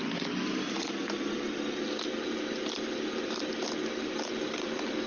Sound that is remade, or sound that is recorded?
recorded